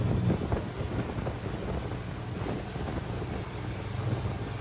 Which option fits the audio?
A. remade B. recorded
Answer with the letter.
B